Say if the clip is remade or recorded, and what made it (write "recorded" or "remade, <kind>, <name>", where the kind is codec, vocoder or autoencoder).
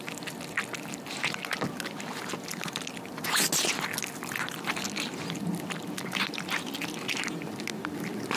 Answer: recorded